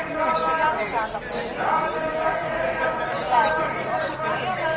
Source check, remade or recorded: recorded